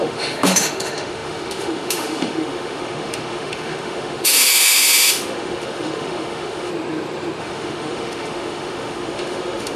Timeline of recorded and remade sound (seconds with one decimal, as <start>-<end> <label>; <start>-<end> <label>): 0.0-6.7 remade; 6.7-7.4 recorded; 7.4-9.8 remade